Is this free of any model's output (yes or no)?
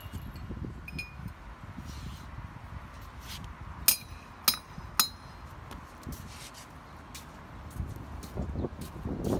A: yes